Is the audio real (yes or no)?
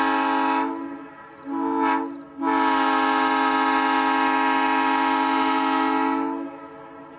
yes